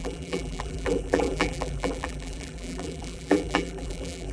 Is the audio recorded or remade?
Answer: remade